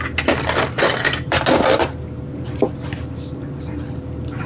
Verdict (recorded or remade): recorded